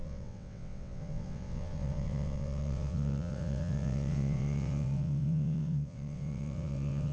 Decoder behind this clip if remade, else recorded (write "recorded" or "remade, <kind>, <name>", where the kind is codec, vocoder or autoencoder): remade, vocoder, WaveNeXt